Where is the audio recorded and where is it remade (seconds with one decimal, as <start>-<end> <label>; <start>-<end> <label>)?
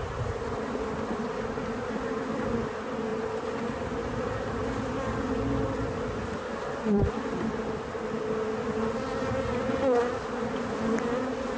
0.0-11.6 recorded